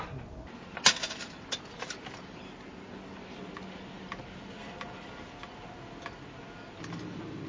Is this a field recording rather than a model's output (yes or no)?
yes